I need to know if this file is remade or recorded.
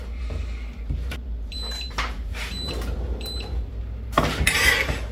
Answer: remade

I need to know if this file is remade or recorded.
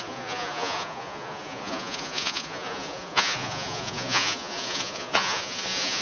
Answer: remade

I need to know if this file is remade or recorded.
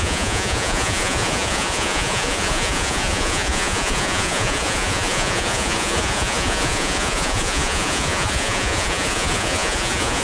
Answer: remade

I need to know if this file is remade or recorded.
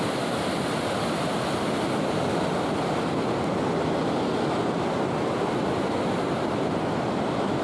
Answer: recorded